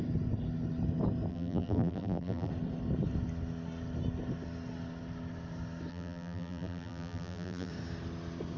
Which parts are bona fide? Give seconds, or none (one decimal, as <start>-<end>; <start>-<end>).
0.0-1.3; 2.5-5.9; 7.7-8.6